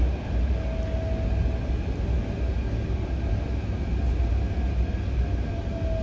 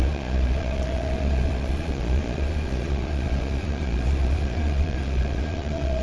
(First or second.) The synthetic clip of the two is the second